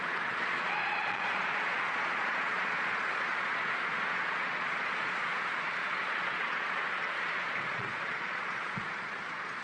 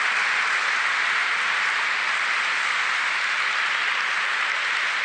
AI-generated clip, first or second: first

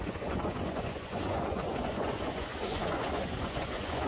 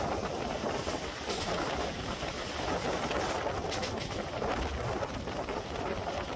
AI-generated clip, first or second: first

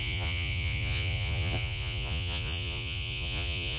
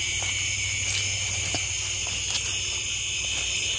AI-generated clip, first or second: first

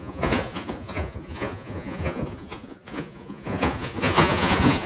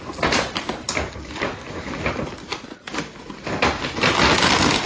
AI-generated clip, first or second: first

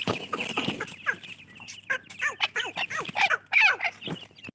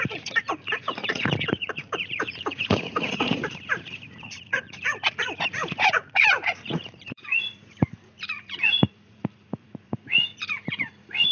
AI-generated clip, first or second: second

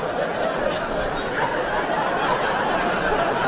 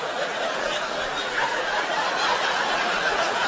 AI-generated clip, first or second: second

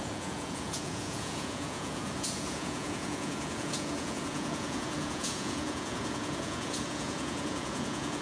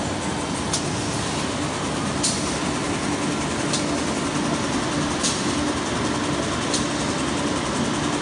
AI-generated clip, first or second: first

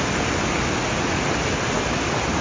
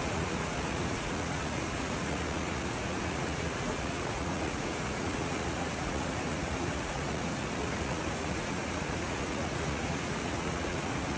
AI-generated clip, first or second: second